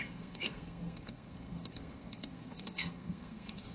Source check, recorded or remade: remade